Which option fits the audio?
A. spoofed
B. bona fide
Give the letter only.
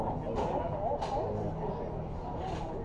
B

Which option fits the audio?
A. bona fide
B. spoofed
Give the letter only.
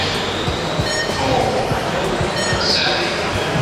B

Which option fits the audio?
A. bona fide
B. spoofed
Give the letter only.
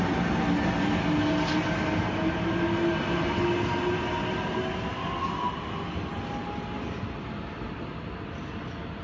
A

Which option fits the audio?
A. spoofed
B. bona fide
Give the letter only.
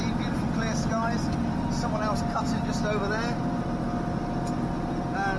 B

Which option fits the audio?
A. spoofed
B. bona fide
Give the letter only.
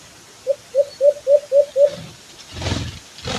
B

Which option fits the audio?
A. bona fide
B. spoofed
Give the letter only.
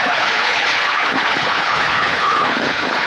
B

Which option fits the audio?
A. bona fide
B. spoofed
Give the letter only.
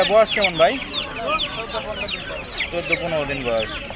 A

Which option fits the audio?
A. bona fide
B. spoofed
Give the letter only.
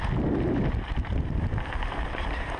A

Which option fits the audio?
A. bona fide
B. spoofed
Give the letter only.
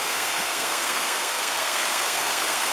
B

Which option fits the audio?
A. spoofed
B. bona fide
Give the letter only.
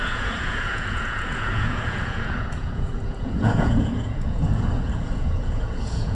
A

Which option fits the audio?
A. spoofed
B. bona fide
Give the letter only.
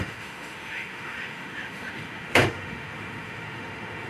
A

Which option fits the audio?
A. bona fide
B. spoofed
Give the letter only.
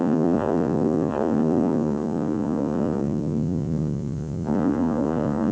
B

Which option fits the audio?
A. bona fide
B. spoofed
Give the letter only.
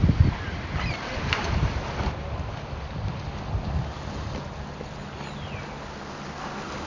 A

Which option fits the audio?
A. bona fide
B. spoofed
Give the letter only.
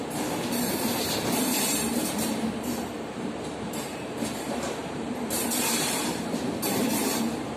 B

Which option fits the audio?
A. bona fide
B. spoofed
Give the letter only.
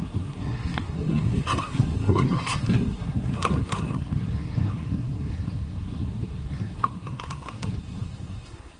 B